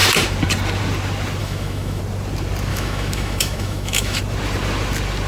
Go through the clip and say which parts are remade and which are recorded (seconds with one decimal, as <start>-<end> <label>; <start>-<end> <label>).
0.0-1.4 recorded; 1.4-2.0 remade; 2.0-2.7 recorded; 2.7-4.2 remade; 4.2-5.3 recorded